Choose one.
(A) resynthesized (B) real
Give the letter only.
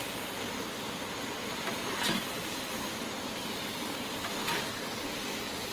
B